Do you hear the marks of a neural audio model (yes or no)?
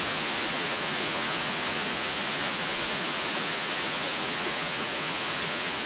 yes